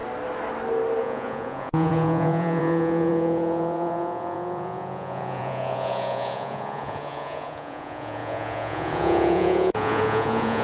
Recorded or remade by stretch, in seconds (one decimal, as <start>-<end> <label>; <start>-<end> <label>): 0.0-1.0 recorded; 1.0-10.6 remade